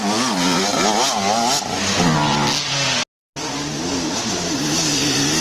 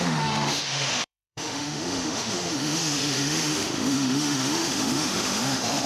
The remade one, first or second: second